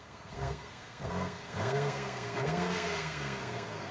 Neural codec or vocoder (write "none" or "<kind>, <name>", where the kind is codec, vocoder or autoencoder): codec, SNAC